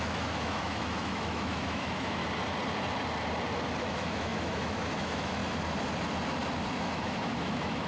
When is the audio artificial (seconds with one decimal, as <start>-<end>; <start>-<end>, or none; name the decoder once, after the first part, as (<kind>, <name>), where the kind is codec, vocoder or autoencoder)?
0.0-2.2 (autoencoder, DAC-VAE); 3.8-5.4; 6.8-7.9